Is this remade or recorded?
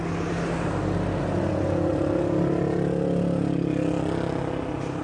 recorded